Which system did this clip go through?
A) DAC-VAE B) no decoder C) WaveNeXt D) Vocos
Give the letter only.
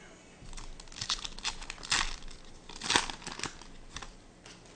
B